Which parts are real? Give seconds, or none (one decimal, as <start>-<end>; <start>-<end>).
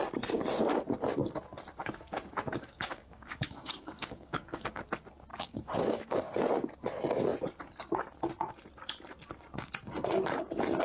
0.0-1.8; 4.8-5.3; 6.2-10.8